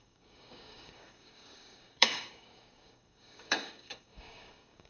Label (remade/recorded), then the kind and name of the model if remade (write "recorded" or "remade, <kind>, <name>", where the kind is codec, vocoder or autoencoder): remade, codec, DAC